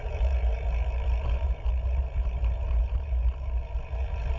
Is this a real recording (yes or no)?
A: no